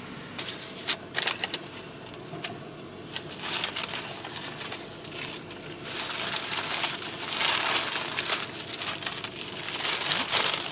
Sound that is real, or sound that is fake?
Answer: real